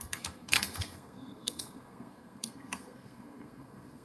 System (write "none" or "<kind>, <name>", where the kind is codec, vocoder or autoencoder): codec, SNAC